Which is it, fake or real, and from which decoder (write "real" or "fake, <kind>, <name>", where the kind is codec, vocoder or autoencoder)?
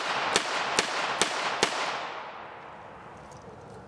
real